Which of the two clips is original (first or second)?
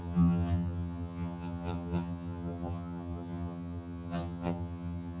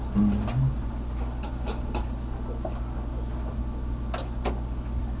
second